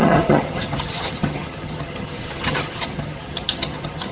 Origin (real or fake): fake